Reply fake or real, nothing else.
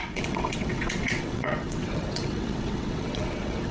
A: fake